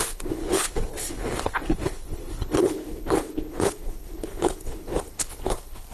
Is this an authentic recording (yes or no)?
no